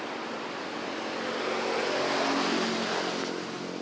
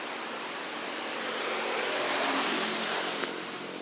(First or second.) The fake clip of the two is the second